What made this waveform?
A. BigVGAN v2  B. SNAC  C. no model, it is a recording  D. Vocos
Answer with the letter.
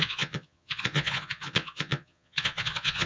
D